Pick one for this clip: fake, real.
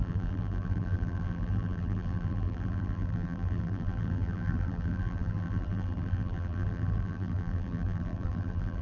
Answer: fake